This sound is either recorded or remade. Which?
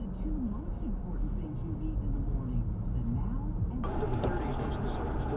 recorded